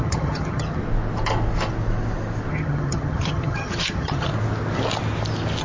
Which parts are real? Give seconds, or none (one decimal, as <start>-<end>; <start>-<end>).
0.8-2.5; 4.3-5.6